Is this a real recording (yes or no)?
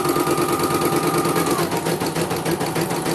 yes